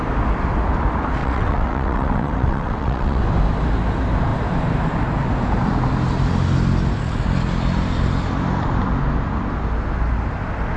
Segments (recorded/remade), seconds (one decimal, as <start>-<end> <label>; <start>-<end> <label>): 0.0-1.2 recorded; 1.2-3.2 remade; 3.2-10.8 recorded